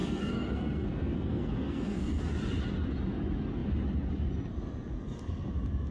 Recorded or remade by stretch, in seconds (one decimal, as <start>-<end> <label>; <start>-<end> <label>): 0.0-2.2 remade; 2.2-5.9 recorded